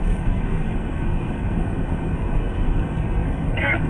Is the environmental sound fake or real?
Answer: fake